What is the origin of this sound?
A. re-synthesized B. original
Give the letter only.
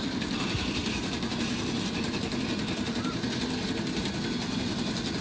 B